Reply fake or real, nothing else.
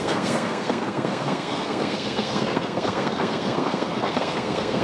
fake